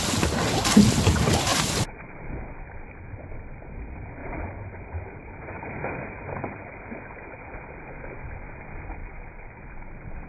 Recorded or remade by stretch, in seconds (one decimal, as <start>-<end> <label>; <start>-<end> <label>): 0.0-1.5 recorded; 1.5-2.5 remade; 2.5-4.2 recorded; 4.2-7.0 remade; 7.0-10.3 recorded